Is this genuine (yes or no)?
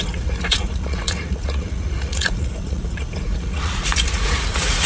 no